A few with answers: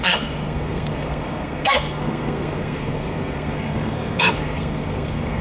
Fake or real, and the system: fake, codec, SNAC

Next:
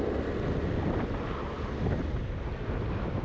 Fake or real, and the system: real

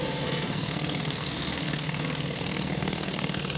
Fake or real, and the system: fake, codec, SNAC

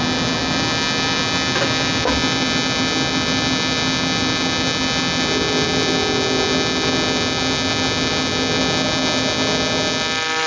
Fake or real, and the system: real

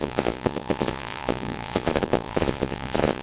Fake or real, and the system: fake, vocoder, Vocos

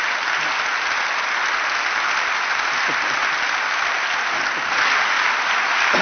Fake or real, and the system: real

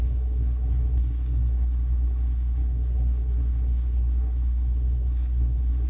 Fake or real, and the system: fake, codec, SNAC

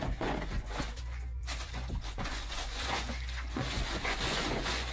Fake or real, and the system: fake, vocoder, Vocos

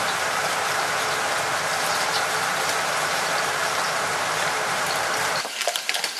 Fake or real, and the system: fake, vocoder, BigVGAN v2